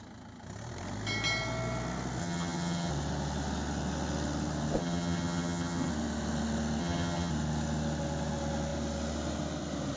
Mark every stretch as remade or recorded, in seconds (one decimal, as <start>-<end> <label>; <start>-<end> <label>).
0.0-2.2 recorded; 2.2-2.9 remade; 2.9-4.8 recorded; 4.8-5.9 remade; 5.9-6.8 recorded; 6.8-7.3 remade; 7.3-10.0 recorded